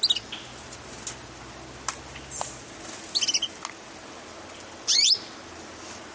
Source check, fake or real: real